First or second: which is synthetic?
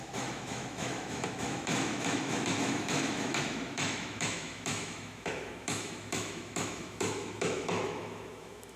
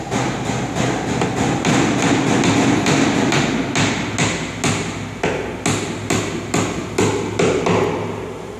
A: first